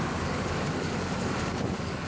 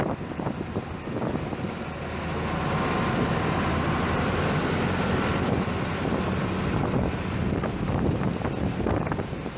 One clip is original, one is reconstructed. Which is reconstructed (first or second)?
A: first